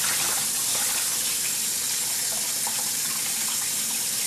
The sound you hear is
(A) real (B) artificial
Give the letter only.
A